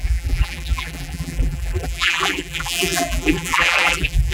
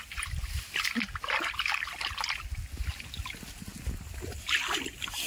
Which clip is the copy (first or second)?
first